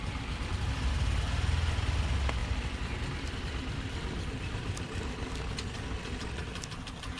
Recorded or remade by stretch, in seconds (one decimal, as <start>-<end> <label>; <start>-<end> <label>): 0.0-7.2 recorded